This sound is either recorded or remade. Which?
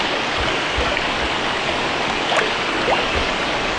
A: remade